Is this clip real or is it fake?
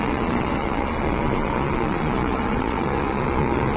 fake